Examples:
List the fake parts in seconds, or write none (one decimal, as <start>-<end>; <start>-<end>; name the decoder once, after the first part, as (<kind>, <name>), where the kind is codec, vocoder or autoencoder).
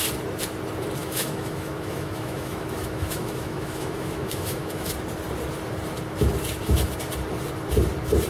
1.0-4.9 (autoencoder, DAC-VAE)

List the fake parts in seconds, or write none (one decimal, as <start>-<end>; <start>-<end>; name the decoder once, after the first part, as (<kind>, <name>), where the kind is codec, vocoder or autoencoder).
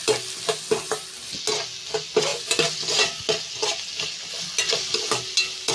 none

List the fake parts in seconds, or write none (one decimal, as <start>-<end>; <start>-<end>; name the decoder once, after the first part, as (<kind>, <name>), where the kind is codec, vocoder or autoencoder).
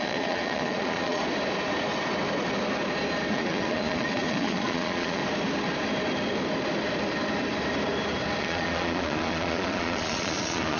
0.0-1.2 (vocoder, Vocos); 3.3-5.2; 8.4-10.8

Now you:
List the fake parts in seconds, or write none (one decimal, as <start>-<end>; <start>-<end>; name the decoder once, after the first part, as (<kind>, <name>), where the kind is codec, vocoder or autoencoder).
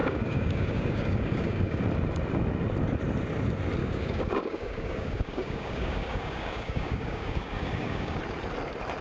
0.0-1.8 (codec, DAC); 3.8-8.2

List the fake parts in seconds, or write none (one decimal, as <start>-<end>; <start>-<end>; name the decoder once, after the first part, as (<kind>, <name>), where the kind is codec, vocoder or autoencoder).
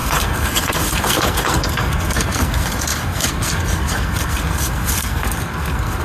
0.0-6.0 (codec, SNAC)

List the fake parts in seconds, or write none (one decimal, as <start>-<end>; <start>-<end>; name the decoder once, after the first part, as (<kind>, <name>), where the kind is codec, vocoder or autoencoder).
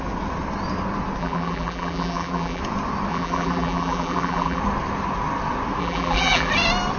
1.2-2.6 (vocoder, BigVGAN v2); 3.1-4.6; 5.8-6.5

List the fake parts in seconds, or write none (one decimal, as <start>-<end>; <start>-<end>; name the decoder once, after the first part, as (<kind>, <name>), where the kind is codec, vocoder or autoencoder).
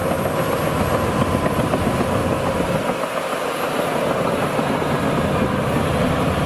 1.4-2.2 (vocoder, BigVGAN v2); 6.1-6.5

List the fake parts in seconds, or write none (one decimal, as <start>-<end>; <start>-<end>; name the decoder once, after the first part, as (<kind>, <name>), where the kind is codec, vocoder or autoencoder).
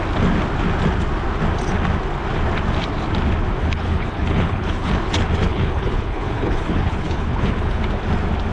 3.6-4.9 (codec, HILCodec); 5.4-7.8